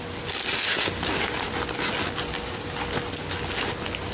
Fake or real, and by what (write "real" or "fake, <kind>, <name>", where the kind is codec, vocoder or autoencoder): real